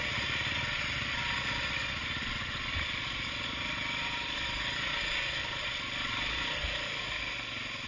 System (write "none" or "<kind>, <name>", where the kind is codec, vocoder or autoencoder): none